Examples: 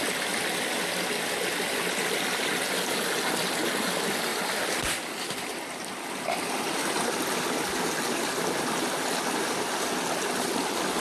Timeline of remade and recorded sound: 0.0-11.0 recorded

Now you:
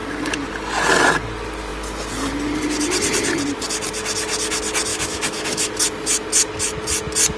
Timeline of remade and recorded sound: 0.0-4.9 recorded; 4.9-5.7 remade; 5.7-7.4 recorded